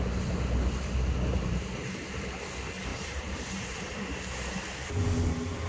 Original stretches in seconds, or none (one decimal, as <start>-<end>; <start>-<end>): 0.0-1.3; 2.3-2.9; 3.8-5.7